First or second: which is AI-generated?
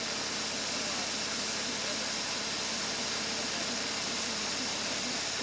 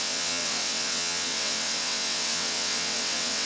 second